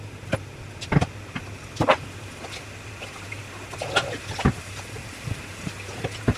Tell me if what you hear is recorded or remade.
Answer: recorded